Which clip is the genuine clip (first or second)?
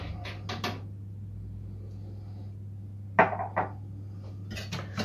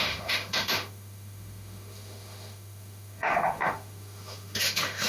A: first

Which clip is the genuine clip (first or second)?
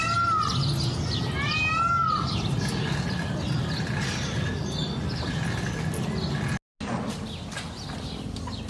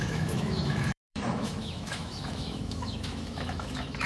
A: first